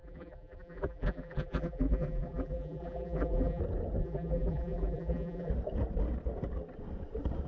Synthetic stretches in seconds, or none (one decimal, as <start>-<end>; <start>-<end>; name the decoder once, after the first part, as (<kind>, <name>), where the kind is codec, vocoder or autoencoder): 0.0-3.6 (vocoder, BigVGAN v2); 4.0-5.5